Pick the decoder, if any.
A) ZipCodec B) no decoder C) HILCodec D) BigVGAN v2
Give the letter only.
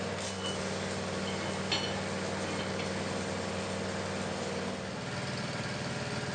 B